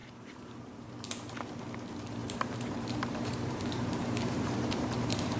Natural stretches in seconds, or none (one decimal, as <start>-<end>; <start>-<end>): 0.9-2.2